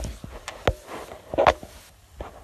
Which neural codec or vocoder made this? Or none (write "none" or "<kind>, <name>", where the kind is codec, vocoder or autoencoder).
none